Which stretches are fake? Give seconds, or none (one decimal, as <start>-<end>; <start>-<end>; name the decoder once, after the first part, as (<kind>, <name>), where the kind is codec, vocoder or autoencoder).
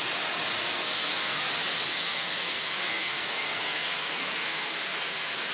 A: 0.6-1.5 (codec, SNAC); 1.9-5.5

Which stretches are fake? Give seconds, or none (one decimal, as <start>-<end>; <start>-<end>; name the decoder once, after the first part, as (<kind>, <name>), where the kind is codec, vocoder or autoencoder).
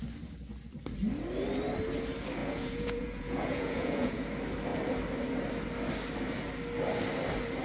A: 2.4-4.2 (vocoder, Vocos)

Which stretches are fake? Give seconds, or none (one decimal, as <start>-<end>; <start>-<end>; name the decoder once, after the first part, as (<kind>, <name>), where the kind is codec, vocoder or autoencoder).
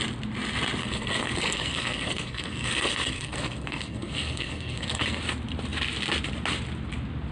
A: 0.8-5.2 (codec, SNAC)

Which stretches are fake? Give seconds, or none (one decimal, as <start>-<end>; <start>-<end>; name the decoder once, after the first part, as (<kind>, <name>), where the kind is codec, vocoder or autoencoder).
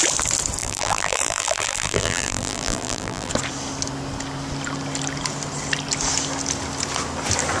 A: 0.6-3.3 (vocoder, BigVGAN v2)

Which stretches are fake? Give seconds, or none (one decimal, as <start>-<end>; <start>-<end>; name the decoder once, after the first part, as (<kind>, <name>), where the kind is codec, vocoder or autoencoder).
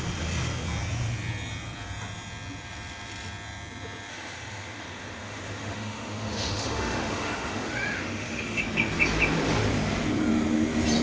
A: 4.1-8.6 (autoencoder, DAC-VAE)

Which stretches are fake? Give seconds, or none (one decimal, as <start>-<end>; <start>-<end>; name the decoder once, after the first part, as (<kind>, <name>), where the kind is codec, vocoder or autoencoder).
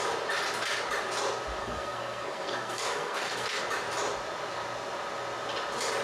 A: 1.6-3.6 (codec, SNAC)